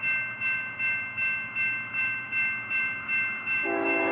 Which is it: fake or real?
fake